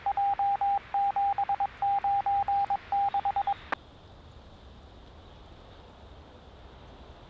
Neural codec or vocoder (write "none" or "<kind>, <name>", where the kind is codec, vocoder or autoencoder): none